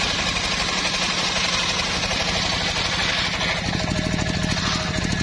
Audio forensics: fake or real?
real